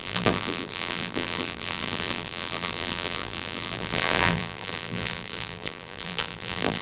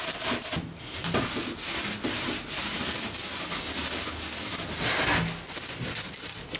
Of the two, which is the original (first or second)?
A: second